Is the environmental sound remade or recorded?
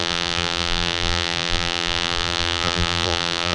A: remade